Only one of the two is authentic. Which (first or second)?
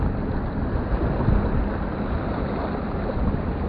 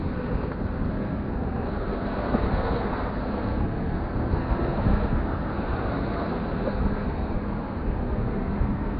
first